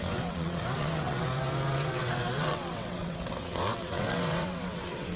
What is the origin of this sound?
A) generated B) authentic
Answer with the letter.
A